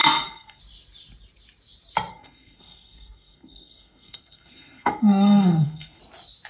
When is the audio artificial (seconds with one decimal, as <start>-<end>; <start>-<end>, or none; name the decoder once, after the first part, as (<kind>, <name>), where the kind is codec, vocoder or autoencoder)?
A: 0.0-0.6 (codec, SNAC); 2.1-6.0